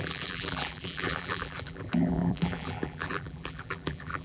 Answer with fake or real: fake